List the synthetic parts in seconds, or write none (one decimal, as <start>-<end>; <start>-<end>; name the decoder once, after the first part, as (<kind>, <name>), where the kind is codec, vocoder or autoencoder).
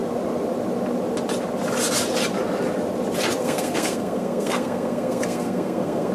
3.4-6.1 (codec, SNAC)